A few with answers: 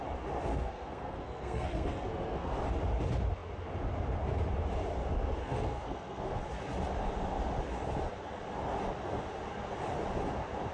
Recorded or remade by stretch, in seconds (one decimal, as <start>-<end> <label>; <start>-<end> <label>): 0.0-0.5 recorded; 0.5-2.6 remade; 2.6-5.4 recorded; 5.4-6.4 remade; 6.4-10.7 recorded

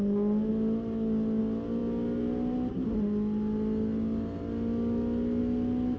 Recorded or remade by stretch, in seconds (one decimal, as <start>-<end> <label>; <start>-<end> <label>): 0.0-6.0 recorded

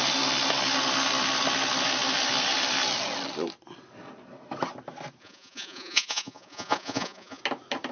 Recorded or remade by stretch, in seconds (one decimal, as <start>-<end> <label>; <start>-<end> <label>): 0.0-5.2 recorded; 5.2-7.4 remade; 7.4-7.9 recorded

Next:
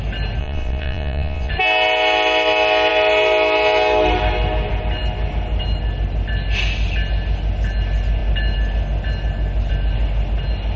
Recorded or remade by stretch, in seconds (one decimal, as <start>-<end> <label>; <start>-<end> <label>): 0.0-0.4 recorded; 0.4-1.5 remade; 1.5-10.8 recorded